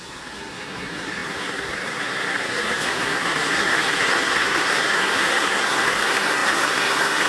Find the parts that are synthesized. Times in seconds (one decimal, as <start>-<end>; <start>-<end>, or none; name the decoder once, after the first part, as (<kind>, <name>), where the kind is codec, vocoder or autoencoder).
0.0-7.3 (codec, SNAC)